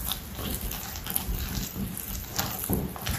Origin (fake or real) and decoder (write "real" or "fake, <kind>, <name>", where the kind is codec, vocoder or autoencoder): real